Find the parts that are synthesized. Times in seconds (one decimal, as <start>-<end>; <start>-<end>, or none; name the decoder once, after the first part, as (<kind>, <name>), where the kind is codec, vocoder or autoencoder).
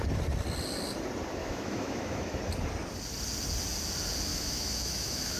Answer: 1.4-2.4 (autoencoder, DAC-VAE); 4.3-5.4